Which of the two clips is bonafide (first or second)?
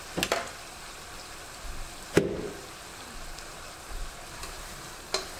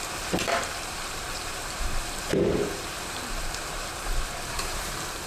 first